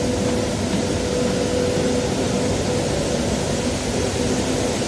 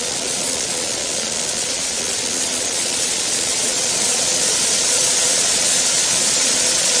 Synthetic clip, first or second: second